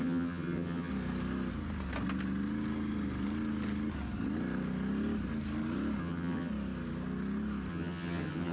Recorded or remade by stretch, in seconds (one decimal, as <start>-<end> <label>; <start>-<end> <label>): 0.0-0.9 remade; 0.9-6.0 recorded; 6.0-6.5 remade; 6.5-7.7 recorded; 7.7-8.5 remade